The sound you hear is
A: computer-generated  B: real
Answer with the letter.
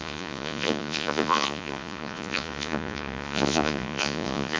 A